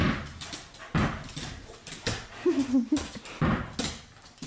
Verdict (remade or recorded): recorded